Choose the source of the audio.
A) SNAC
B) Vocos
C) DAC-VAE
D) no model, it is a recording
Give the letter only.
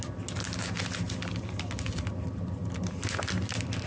D